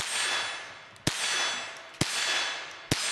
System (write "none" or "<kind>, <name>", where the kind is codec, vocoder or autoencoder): none